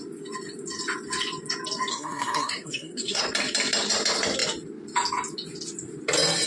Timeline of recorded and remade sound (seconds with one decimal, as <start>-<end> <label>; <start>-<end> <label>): 0.0-1.9 recorded; 1.9-3.2 remade; 3.2-6.5 recorded